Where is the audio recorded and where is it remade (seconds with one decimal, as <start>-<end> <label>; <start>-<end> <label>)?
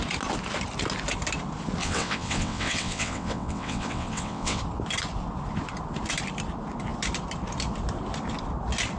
0.0-1.8 recorded; 1.8-4.6 remade; 4.6-9.0 recorded